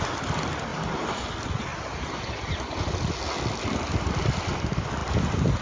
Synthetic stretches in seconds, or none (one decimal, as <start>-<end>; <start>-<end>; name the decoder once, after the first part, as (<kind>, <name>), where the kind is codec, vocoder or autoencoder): none